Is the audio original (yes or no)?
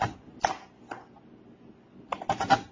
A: yes